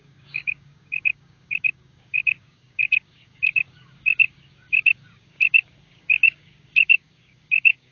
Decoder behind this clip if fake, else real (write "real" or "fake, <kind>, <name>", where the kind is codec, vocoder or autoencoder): fake, codec, DAC